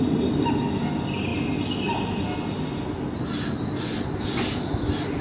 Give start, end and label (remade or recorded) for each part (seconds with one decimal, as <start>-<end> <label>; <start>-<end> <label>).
0.0-5.2 recorded